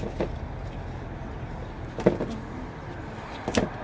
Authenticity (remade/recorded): recorded